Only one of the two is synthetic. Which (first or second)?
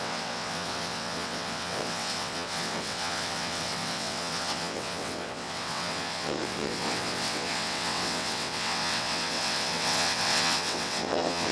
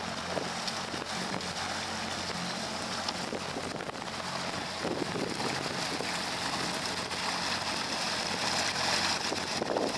first